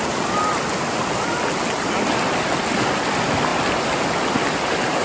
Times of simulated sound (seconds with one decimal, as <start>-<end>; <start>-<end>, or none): none